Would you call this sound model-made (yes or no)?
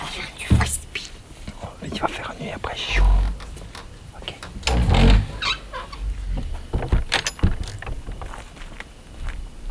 no